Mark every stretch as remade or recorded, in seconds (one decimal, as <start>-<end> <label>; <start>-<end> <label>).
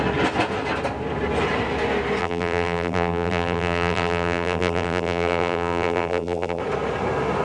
0.0-2.2 recorded; 2.2-6.6 remade; 6.6-7.4 recorded